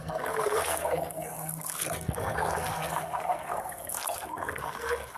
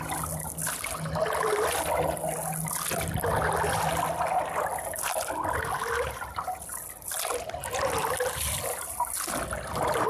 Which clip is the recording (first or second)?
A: second